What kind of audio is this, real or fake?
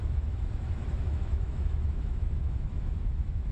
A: fake